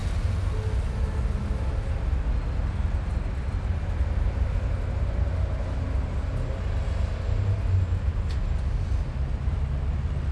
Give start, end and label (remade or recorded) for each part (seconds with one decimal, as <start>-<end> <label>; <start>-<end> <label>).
0.0-10.3 recorded